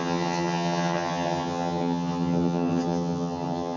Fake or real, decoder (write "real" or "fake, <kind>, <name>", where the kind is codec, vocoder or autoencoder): fake, vocoder, HiFi-GAN